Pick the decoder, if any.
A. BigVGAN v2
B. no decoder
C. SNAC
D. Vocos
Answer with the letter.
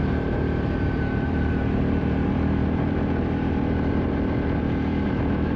A